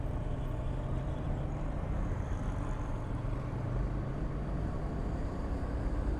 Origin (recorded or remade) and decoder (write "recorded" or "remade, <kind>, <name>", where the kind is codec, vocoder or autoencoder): remade, vocoder, BigVGAN v2